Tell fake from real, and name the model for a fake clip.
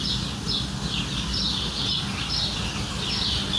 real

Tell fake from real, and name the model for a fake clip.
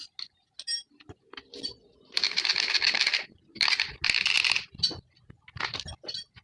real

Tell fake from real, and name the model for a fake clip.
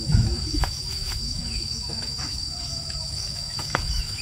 fake, autoencoder, DAC-VAE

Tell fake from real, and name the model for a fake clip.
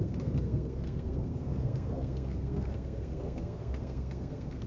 fake, codec, SNAC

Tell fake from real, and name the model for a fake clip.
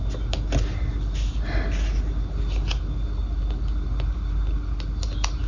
real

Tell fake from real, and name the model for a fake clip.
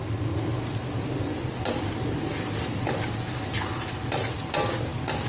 real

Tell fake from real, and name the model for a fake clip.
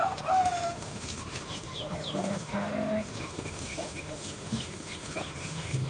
fake, autoencoder, DAC-VAE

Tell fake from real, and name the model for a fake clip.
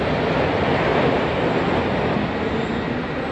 real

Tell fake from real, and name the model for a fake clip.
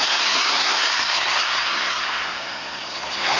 fake, codec, SNAC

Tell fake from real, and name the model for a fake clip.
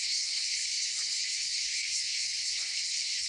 fake, codec, HILCodec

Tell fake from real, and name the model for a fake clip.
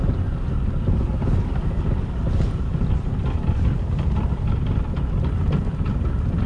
real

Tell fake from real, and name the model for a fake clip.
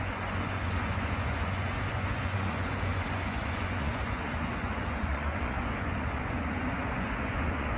fake, vocoder, Vocos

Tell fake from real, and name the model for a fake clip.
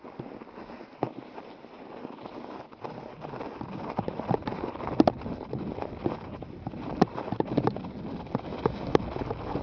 real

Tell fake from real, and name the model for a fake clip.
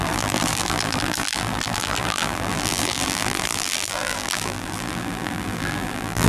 fake, vocoder, BigVGAN v2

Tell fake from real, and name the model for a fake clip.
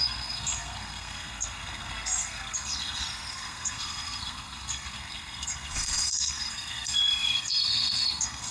fake, codec, SNAC